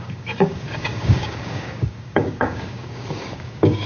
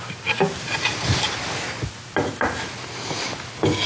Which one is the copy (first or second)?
first